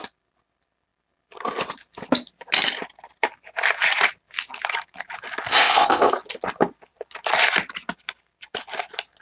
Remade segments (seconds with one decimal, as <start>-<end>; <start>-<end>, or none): 5.5-6.1